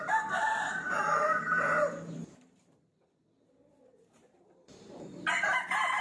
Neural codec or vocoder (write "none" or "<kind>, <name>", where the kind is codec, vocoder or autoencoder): vocoder, BigVGAN v2